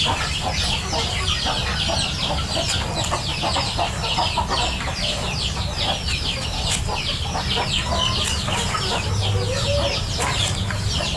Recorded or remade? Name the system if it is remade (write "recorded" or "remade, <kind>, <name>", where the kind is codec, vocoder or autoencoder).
recorded